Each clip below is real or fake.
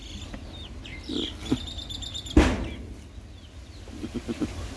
real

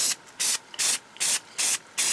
real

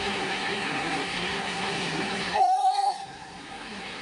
fake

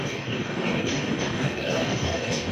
fake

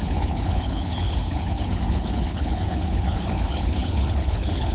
fake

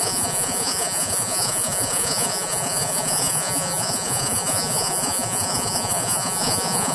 fake